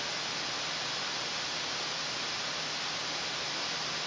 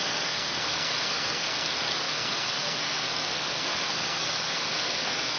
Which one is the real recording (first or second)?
first